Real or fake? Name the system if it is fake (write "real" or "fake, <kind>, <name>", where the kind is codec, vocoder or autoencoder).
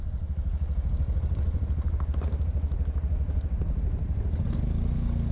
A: real